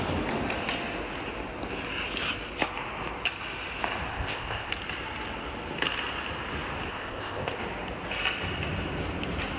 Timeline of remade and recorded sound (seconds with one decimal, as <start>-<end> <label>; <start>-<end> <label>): 0.0-4.1 recorded; 4.1-4.7 remade; 4.7-6.9 recorded; 6.9-7.6 remade; 7.6-9.6 recorded